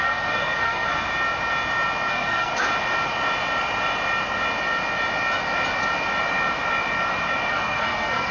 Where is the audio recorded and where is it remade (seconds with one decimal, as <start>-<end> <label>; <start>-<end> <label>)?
0.0-1.1 remade; 1.1-2.1 recorded; 2.1-2.5 remade; 2.5-7.5 recorded; 7.5-8.3 remade